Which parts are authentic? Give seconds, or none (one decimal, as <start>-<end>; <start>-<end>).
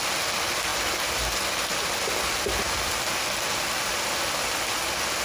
0.0-5.2